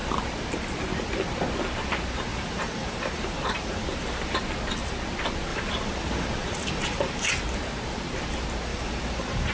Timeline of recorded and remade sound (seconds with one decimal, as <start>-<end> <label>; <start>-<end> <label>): 0.0-2.3 recorded; 2.3-4.4 remade; 4.4-5.5 recorded; 5.5-7.3 remade; 7.3-8.7 recorded; 8.7-9.5 remade